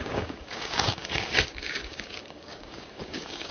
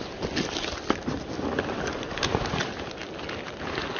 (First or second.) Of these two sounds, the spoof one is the first